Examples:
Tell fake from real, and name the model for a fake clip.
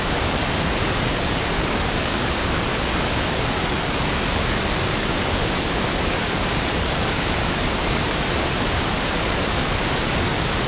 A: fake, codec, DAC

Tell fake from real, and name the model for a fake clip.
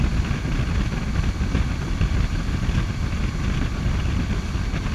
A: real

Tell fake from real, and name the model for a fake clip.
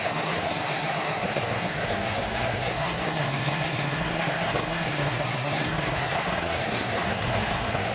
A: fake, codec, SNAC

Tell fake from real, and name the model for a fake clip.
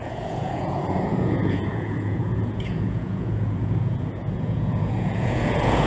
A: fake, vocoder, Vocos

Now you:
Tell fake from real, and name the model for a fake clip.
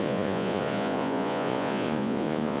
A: fake, vocoder, Vocos